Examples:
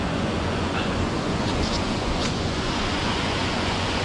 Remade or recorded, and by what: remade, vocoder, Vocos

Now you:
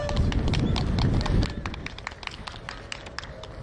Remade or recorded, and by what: recorded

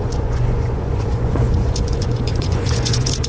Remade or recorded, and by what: remade, vocoder, Vocos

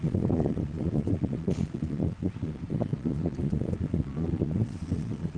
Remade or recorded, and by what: remade, vocoder, Vocos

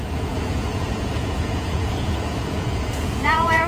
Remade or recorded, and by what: remade, vocoder, Vocos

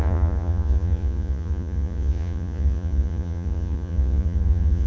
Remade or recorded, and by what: remade, vocoder, Vocos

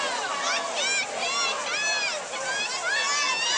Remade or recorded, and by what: recorded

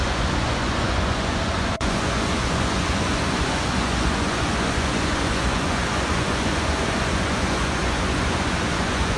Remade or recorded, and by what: remade, vocoder, Vocos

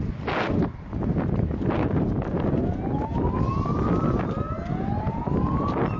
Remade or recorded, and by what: recorded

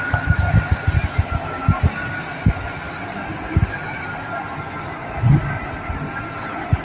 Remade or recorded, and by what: recorded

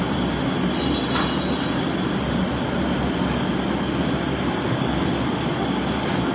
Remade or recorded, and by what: recorded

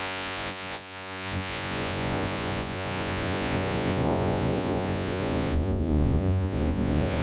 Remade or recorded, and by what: remade, vocoder, Vocos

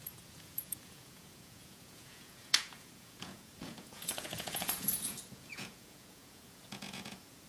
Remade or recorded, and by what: remade, vocoder, Vocos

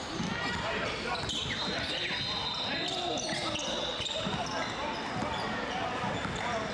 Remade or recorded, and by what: recorded